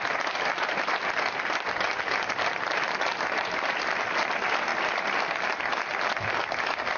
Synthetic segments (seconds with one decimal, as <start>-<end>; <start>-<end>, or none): none